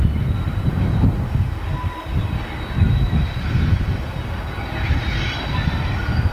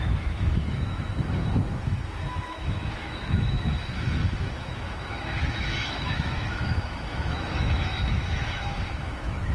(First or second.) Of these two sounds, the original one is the first